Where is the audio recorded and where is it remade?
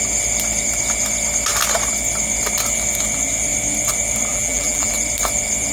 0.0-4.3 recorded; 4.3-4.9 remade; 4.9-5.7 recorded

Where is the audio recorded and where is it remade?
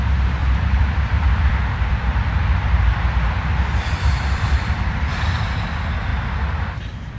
0.0-0.4 recorded; 0.4-4.7 remade; 4.7-6.1 recorded; 6.1-7.2 remade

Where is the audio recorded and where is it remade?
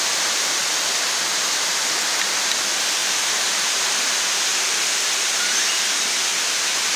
0.0-3.0 recorded; 3.0-4.0 remade; 4.0-4.5 recorded; 4.5-5.1 remade; 5.1-7.0 recorded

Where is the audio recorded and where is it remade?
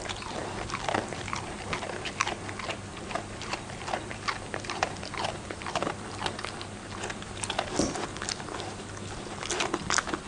0.0-0.4 recorded; 0.4-2.2 remade; 2.2-2.9 recorded; 2.9-6.1 remade; 6.1-10.3 recorded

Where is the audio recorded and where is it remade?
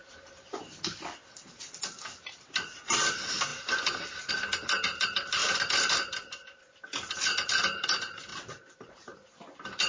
0.0-0.7 remade; 0.7-5.4 recorded; 5.4-6.6 remade; 6.6-8.3 recorded; 8.3-9.9 remade